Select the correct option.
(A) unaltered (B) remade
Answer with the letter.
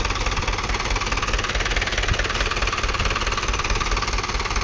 A